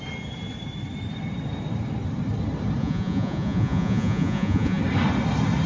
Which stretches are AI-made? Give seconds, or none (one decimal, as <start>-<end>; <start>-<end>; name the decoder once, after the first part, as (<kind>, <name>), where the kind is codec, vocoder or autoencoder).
2.8-4.8 (vocoder, Vocos)